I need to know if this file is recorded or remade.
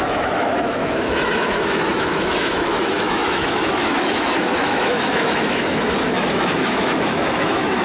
remade